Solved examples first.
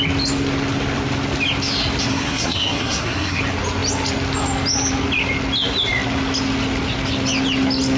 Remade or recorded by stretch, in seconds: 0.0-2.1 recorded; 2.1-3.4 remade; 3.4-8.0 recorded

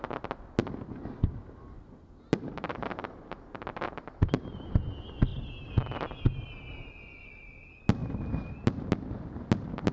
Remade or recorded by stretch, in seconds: 0.0-9.9 recorded

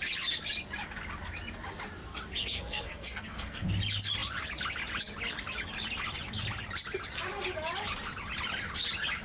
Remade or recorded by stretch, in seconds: 0.0-2.4 recorded; 2.4-3.6 remade; 3.6-9.2 recorded